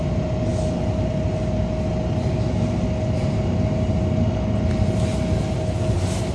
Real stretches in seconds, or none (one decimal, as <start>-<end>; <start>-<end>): 0.0-6.3

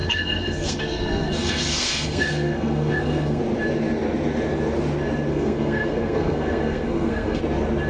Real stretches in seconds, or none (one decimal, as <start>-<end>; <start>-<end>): 3.4-5.3; 7.4-7.9

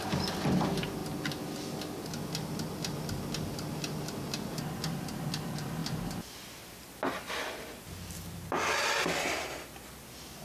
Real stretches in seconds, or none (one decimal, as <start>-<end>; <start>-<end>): 0.0-10.4